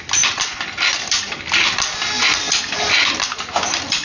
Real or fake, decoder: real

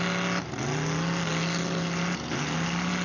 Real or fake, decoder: real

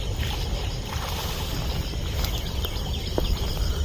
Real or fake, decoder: real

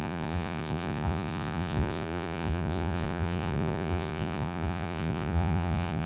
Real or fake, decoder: fake, vocoder, Vocos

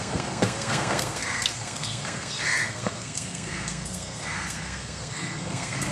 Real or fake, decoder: fake, codec, SNAC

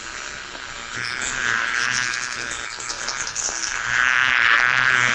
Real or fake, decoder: fake, codec, SNAC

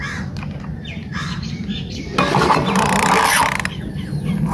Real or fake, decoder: real